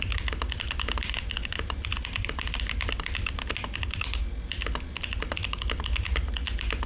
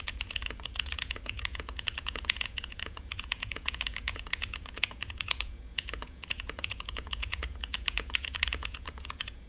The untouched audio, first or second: first